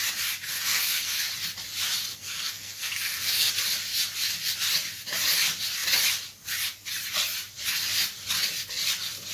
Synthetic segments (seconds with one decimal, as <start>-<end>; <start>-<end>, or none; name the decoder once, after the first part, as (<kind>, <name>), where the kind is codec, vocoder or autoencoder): 0.5-1.3 (codec, SNAC); 2.1-3.5